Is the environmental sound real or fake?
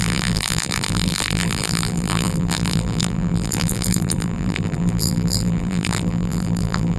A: fake